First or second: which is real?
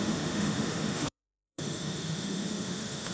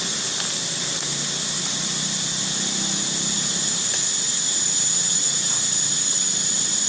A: second